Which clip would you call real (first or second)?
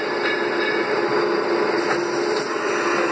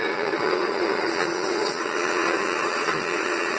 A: first